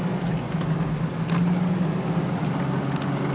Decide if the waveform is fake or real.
real